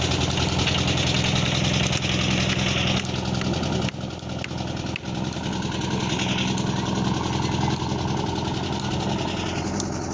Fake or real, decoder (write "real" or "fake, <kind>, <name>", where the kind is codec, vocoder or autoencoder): real